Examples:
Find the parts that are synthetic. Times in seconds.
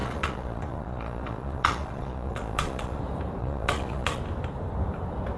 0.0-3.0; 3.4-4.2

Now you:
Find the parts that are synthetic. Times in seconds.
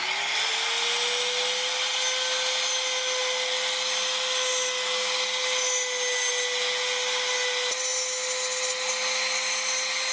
none